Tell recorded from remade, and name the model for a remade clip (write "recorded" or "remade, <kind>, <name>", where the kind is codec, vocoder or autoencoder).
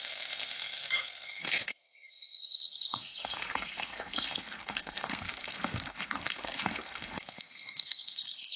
remade, codec, SNAC